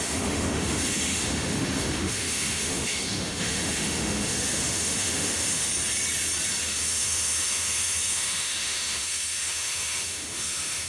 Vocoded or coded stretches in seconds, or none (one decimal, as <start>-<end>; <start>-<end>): 0.0-5.7; 6.6-10.9